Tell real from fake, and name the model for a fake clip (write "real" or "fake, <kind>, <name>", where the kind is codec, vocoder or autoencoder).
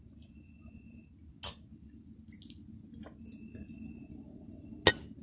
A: real